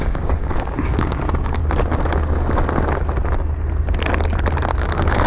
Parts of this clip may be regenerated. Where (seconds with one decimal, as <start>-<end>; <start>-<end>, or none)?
0.0-1.6; 4.8-5.3